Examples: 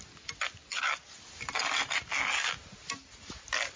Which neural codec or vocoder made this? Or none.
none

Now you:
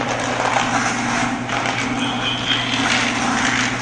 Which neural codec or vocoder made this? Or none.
none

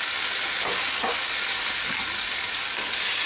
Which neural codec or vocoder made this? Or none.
none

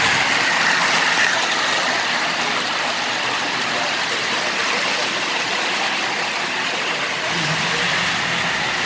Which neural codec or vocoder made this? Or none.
none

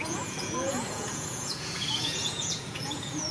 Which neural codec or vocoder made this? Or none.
vocoder, Vocos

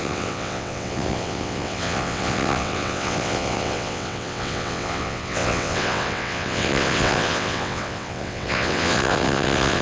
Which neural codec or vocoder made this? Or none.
vocoder, WaveNeXt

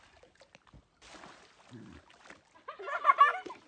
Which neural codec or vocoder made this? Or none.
none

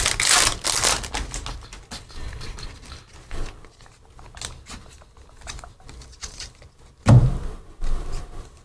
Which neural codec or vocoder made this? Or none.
none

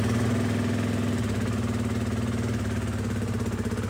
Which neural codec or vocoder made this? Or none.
none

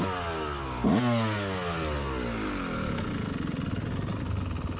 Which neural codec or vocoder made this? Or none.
none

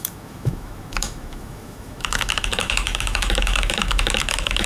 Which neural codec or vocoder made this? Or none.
autoencoder, DAC-VAE